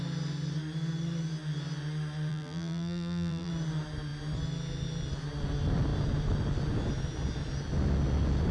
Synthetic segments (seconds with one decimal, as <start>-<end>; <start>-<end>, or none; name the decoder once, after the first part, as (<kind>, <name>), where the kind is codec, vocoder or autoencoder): 2.3-3.5 (vocoder, BigVGAN v2)